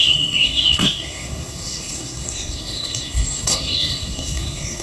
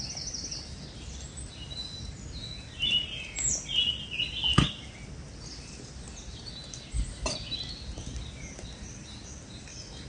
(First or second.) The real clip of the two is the second